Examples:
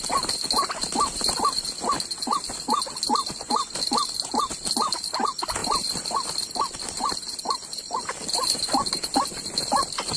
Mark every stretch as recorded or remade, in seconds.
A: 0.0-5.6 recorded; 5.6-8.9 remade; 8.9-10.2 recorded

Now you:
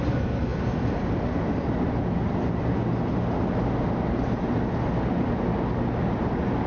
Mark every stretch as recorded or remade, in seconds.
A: 0.0-6.7 recorded

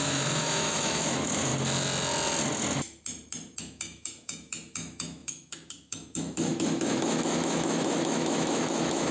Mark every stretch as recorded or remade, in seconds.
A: 0.0-1.5 remade; 1.5-3.6 recorded; 3.6-9.1 remade

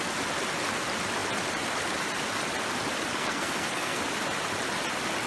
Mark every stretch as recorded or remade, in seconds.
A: 0.0-3.1 recorded; 3.1-4.0 remade; 4.0-5.3 recorded

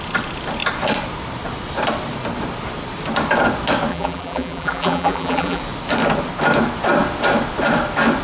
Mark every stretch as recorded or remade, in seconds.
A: 0.0-3.9 recorded; 3.9-5.6 remade; 5.6-8.2 recorded

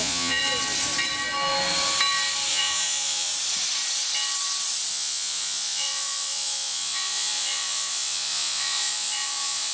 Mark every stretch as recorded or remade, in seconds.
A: 0.0-0.4 remade; 0.4-2.5 recorded; 2.5-3.3 remade; 3.3-4.9 recorded; 4.9-9.7 remade

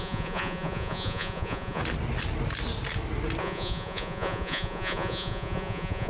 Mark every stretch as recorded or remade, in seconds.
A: 0.0-1.8 remade; 1.8-3.4 recorded; 3.4-6.1 remade

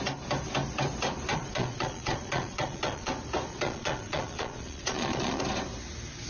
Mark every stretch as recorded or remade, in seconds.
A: 0.0-1.3 recorded; 1.3-3.1 remade; 3.1-3.5 recorded; 3.5-5.4 remade; 5.4-6.3 recorded